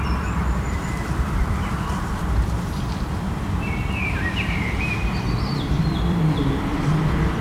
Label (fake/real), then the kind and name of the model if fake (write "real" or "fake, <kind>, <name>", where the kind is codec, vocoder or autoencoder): fake, vocoder, BigVGAN v2